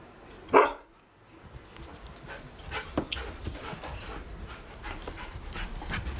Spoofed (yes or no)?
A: no